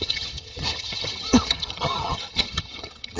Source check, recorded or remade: remade